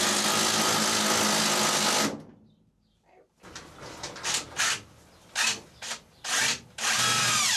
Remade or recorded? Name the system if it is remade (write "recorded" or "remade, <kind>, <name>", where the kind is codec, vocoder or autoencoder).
recorded